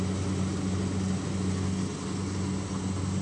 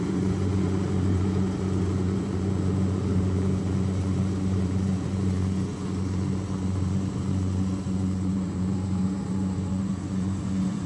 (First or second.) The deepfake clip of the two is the second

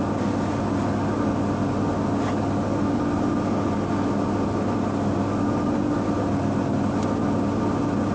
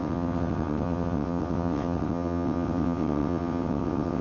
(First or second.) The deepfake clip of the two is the second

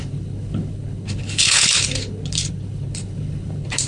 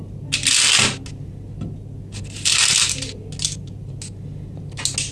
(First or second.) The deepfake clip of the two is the first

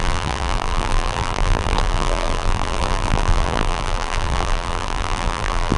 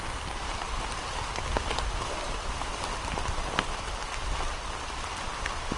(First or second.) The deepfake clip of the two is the first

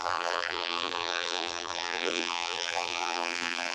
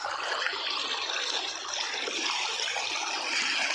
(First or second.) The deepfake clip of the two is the first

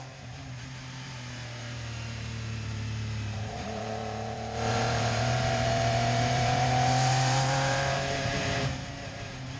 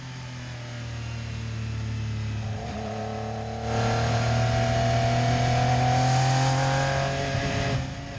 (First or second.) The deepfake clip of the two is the first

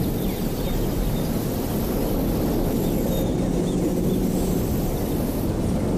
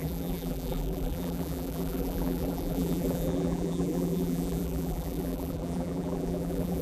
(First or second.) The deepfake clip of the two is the second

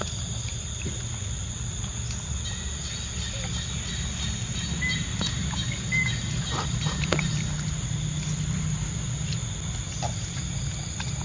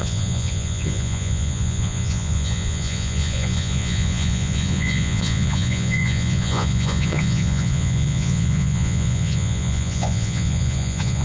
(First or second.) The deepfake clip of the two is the second